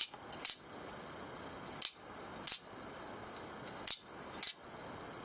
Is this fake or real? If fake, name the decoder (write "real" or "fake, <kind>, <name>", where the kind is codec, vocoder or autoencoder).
real